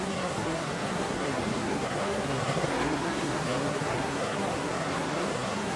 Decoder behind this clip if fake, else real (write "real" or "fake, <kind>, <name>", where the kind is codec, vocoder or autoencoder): fake, codec, SNAC